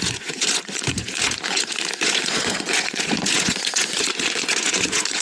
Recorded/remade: remade